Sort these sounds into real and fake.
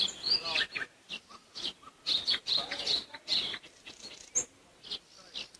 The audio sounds real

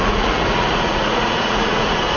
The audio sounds fake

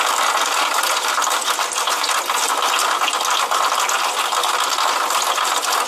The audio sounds real